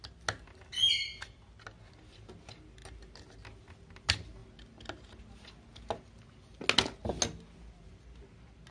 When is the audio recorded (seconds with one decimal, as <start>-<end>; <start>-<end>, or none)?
0.0-8.7